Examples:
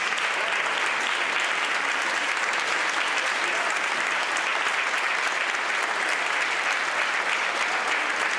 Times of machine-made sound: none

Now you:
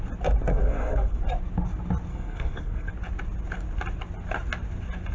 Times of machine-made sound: 0.5-1.2 (codec, SNAC); 2.1-2.9